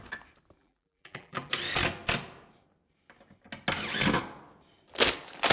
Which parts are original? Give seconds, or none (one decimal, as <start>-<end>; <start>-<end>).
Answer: 0.0-0.6; 1.5-5.5